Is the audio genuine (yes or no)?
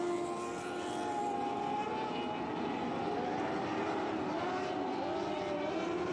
yes